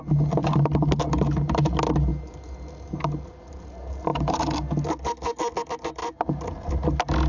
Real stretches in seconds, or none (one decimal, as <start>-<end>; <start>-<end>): 0.0-7.3